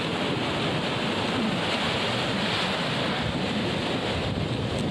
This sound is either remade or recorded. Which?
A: recorded